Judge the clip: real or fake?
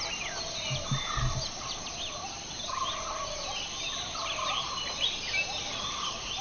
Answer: real